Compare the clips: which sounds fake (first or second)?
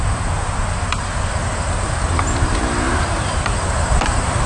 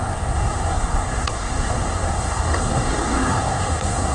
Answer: second